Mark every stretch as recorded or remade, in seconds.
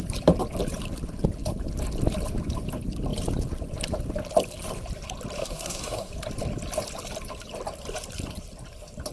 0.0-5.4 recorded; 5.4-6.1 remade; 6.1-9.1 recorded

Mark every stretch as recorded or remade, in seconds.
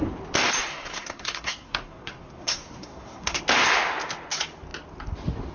0.0-0.7 recorded; 0.7-3.4 remade; 3.4-5.5 recorded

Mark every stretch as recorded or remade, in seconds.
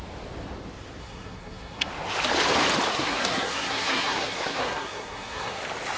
0.0-1.0 recorded; 1.0-1.9 remade; 1.9-2.9 recorded; 2.9-5.6 remade; 5.6-6.0 recorded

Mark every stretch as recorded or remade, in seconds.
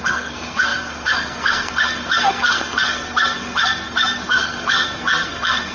0.0-5.7 remade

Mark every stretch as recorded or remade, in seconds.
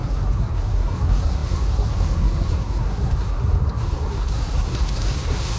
0.0-5.6 remade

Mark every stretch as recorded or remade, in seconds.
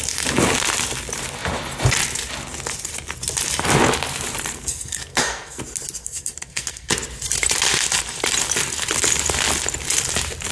0.0-4.5 recorded; 4.5-5.6 remade; 5.6-6.0 recorded; 6.0-6.9 remade; 6.9-10.5 recorded